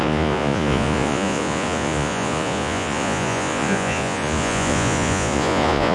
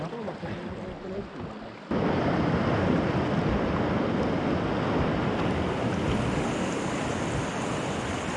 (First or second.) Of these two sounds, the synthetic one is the first